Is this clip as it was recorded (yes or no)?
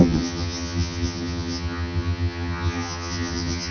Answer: no